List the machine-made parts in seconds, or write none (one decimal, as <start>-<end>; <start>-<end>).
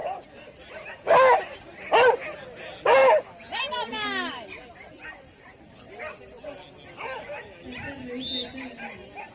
none